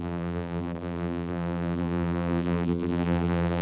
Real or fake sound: fake